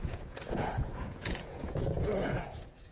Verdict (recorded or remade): remade